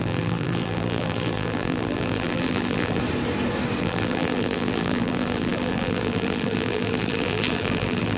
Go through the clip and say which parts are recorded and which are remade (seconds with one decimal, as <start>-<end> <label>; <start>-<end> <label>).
0.0-3.0 remade; 3.0-3.8 recorded; 3.8-8.2 remade